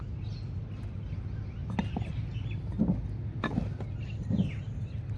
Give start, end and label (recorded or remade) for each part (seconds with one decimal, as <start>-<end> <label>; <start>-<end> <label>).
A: 0.0-5.2 recorded